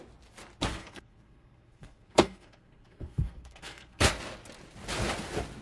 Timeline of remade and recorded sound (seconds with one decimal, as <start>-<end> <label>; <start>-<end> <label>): 0.0-0.7 recorded; 0.7-4.1 remade; 4.1-5.6 recorded